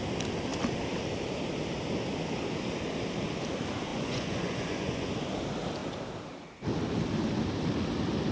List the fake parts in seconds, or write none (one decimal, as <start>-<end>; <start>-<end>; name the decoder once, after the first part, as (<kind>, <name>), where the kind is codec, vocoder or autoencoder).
3.9-5.1 (vocoder, Vocos)